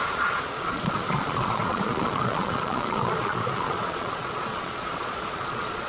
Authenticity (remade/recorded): remade